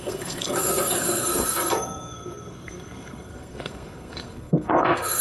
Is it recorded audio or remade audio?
remade